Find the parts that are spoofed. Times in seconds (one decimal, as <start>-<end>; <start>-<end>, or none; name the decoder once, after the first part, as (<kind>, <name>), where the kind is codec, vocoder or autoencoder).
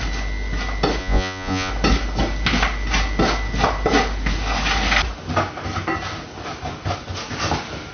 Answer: 1.0-1.7 (vocoder, Vocos)